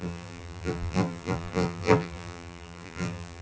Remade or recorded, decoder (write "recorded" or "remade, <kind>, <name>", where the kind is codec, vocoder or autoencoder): remade, vocoder, BigVGAN v2